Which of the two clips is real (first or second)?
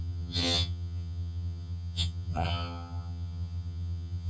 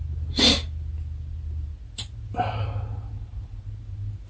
second